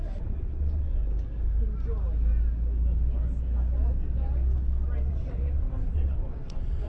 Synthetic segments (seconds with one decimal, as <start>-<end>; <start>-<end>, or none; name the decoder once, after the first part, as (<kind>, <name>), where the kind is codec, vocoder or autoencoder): 0.0-1.0 (vocoder, WaveNeXt); 5.1-6.9